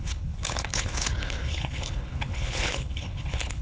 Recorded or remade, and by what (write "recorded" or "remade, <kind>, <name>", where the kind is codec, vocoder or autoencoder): remade, codec, HILCodec